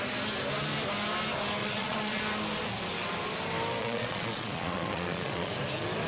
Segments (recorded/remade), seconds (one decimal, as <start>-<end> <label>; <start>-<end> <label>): 0.0-1.6 recorded; 1.6-2.2 remade; 2.2-3.8 recorded; 3.8-5.5 remade; 5.5-6.1 recorded